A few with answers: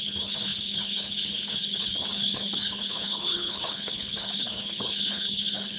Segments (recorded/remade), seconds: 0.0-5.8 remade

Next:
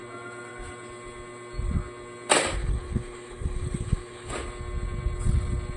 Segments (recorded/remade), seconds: 0.0-2.6 recorded; 2.6-4.3 remade; 4.3-5.8 recorded

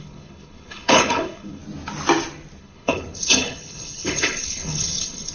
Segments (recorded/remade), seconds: 0.0-1.6 remade; 1.6-2.6 recorded; 2.6-5.3 remade

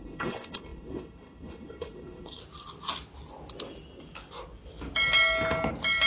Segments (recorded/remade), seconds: 0.0-2.4 remade; 2.4-6.1 recorded

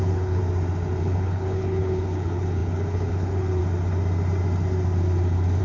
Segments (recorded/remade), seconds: 0.0-0.4 remade; 0.4-1.0 recorded; 1.0-3.6 remade; 3.6-5.6 recorded